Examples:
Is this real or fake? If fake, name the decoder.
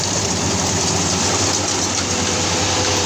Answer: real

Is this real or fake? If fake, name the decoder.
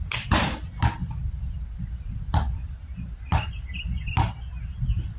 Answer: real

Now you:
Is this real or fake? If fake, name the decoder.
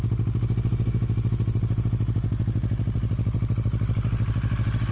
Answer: real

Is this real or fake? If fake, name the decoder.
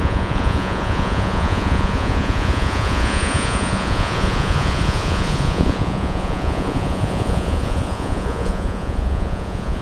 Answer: fake, vocoder, Vocos